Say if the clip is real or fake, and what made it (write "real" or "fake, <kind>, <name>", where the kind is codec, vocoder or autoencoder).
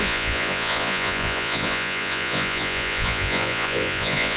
fake, vocoder, Vocos